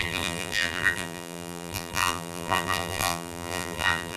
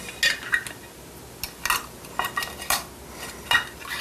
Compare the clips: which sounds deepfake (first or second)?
first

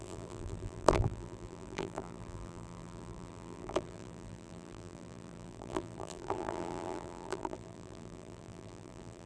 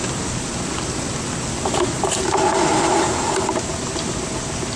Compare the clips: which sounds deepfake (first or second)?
first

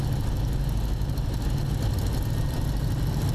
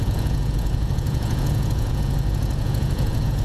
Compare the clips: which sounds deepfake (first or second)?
second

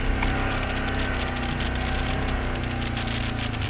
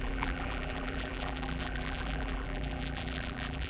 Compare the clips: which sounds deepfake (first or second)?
second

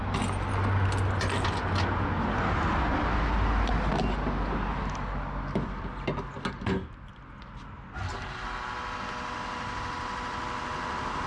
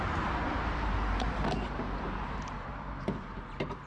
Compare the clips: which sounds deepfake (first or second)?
second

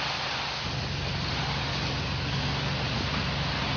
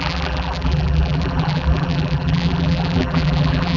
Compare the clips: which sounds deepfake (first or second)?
second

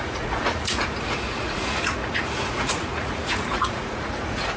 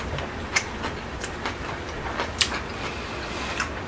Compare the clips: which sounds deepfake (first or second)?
first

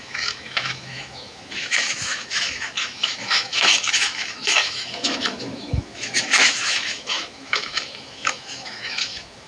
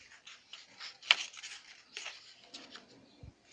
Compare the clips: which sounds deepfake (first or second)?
first